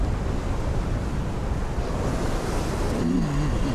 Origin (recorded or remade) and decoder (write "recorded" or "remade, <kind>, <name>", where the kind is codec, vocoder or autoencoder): recorded